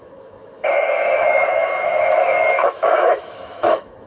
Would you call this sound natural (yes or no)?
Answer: no